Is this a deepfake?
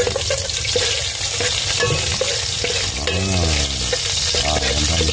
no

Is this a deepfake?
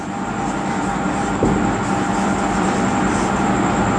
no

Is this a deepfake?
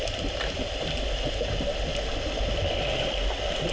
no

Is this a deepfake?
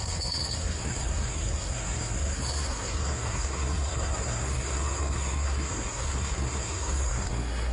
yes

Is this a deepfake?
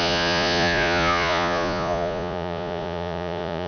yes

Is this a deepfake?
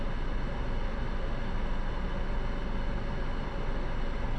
no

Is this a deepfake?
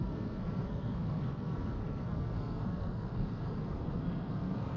yes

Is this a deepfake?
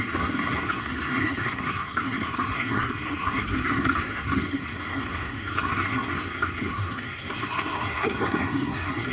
yes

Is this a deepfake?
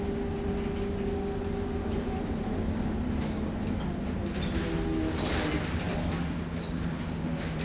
no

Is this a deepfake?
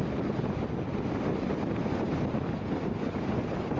no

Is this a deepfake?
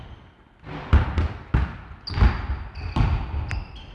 no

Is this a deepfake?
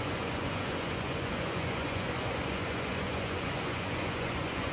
yes